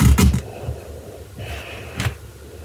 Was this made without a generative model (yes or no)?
yes